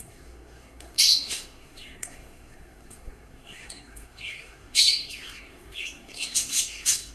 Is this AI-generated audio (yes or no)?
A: yes